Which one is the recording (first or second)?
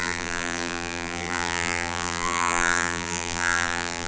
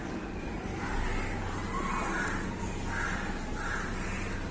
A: second